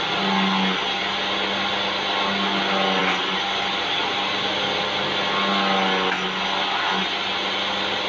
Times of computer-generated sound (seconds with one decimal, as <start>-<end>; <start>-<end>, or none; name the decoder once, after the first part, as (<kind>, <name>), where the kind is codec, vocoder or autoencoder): none